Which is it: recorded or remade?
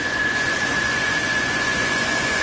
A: remade